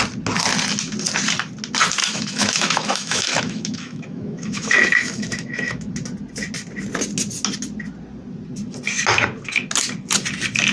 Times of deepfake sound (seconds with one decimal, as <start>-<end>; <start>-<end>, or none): 2.0-5.9